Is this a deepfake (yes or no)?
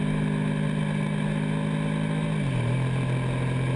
no